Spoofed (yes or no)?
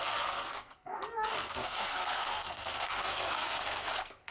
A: yes